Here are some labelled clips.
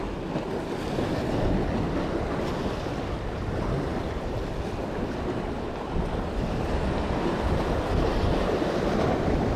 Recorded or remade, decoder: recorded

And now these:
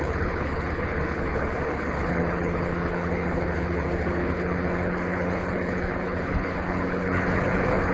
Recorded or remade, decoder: remade, codec, HILCodec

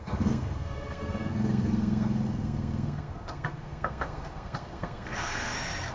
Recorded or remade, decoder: remade, codec, SNAC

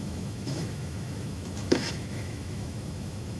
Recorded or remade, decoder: remade, autoencoder, DAC-VAE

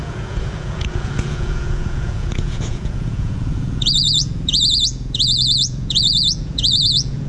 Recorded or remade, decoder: remade, vocoder, Vocos